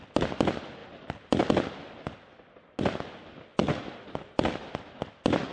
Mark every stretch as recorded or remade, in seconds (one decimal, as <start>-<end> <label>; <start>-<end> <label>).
0.0-3.5 recorded; 3.5-4.9 remade; 4.9-5.5 recorded